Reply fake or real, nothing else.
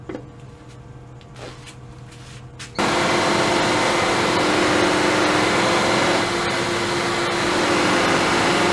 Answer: real